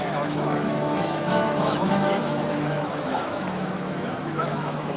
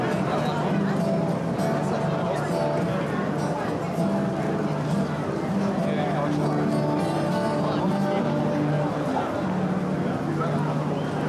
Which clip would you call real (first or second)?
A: second